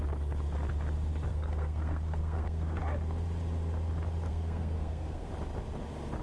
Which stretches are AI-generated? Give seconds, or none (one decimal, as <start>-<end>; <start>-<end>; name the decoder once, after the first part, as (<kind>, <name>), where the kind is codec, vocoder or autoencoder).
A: 1.3-2.8 (codec, SNAC); 4.3-5.3